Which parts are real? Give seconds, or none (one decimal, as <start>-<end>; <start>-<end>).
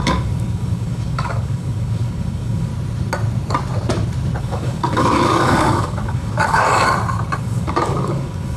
2.7-4.4; 6.7-7.4